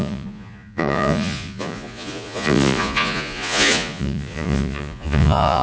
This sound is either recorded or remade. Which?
remade